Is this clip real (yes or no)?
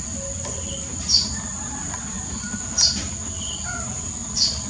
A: yes